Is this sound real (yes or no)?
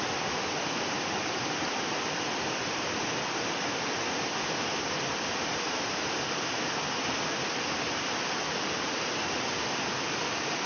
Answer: yes